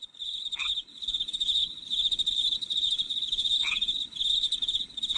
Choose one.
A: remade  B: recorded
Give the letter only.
A